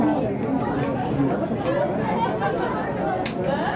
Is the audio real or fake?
real